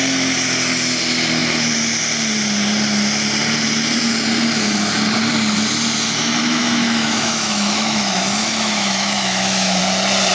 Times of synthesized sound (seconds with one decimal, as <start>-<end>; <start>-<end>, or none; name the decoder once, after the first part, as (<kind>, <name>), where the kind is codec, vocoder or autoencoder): 6.4-9.8 (autoencoder, DAC-VAE)